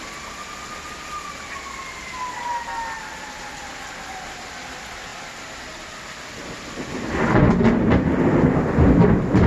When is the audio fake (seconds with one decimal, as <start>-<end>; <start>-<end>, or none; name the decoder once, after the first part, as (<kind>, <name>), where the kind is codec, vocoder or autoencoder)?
none